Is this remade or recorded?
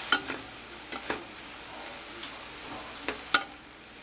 recorded